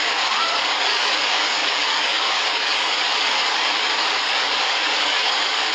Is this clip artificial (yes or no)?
yes